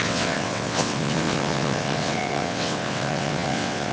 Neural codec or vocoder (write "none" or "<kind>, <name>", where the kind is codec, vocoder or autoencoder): vocoder, WaveNeXt